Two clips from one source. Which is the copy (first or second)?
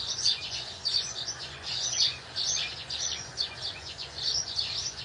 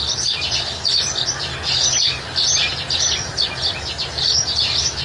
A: first